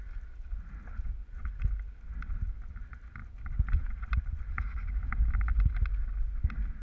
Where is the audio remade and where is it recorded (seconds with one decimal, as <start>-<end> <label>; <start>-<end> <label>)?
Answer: 0.0-3.2 recorded; 3.2-4.4 remade; 4.4-6.8 recorded